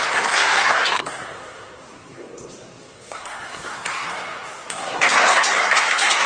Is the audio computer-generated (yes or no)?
yes